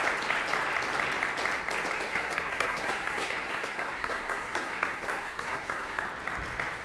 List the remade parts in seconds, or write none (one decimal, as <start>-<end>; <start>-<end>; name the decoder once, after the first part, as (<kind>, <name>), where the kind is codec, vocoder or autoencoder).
2.1-6.0 (codec, SNAC)